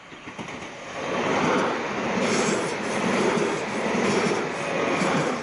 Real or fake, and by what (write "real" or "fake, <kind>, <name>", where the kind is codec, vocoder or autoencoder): real